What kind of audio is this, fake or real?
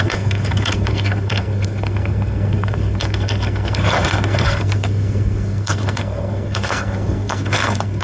fake